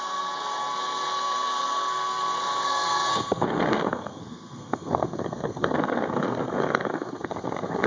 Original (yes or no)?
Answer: no